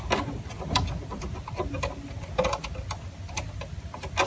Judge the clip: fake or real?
real